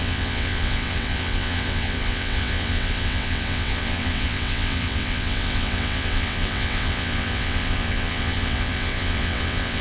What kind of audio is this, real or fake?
fake